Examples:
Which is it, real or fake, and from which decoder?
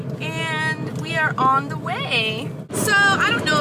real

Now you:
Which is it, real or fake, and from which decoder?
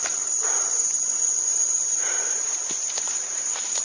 fake, vocoder, BigVGAN v2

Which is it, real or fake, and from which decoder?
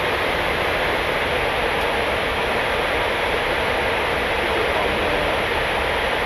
real